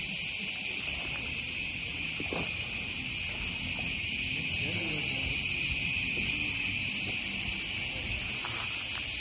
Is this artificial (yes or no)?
no